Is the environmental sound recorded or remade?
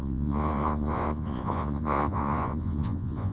remade